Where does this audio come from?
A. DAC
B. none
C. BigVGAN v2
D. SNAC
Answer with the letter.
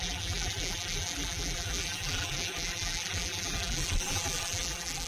C